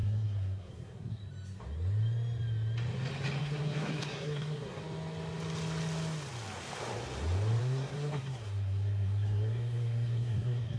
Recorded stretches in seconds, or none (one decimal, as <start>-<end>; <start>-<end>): 1.2-3.4; 4.8-7.6